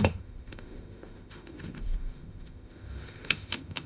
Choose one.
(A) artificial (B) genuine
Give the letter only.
A